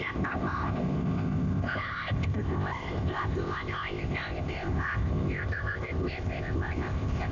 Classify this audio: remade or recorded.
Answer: remade